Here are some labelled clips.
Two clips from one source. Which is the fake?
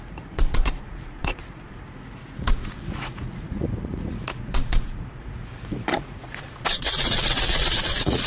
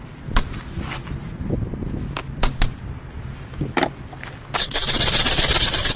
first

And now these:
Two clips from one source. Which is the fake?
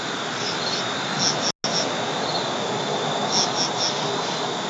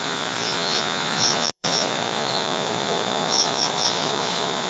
second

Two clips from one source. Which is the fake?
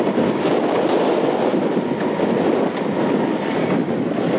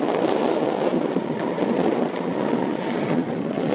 second